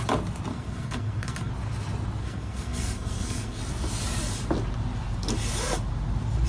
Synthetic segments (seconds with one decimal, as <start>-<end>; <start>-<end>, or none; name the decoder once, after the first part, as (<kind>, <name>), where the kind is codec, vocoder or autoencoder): 0.5-1.5 (codec, SNAC); 2.2-3.6